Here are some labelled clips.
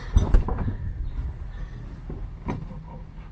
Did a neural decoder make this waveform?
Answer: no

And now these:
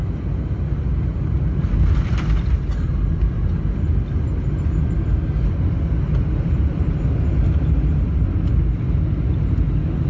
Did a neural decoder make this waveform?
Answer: no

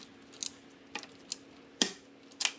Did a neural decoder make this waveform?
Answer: no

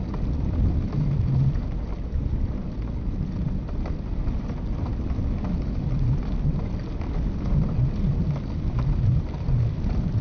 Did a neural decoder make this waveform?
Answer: no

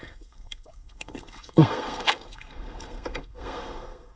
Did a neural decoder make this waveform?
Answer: yes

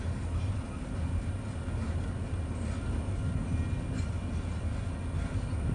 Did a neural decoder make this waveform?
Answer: no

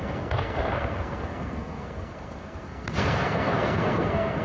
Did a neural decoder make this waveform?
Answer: yes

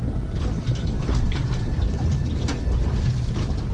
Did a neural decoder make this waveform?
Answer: no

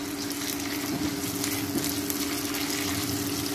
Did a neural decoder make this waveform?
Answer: no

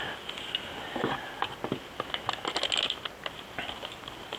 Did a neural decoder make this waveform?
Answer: no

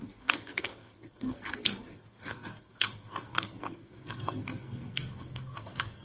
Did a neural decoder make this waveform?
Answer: yes